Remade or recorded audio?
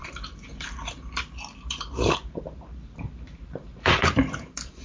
remade